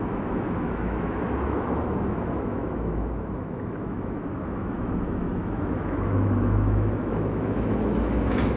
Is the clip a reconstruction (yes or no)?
yes